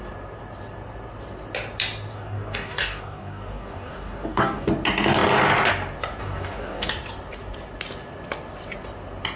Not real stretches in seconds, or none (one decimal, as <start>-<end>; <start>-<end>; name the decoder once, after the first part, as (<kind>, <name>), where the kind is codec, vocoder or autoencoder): 2.1-4.7 (codec, DAC); 6.2-6.9